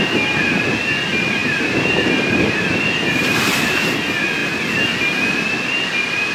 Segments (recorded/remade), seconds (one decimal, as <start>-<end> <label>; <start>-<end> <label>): 0.0-1.4 recorded; 1.4-3.9 remade; 3.9-6.3 recorded